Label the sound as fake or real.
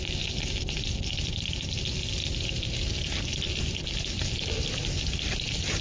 real